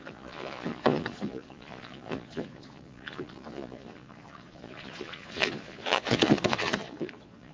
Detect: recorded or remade remade